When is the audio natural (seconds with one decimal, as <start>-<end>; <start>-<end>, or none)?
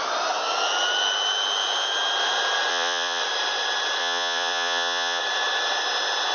0.0-2.7; 3.2-4.0; 5.2-6.3